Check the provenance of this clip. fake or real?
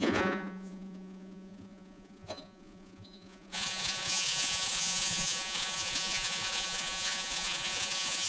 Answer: fake